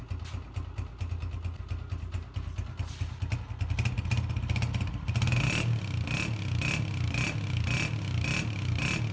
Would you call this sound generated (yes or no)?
no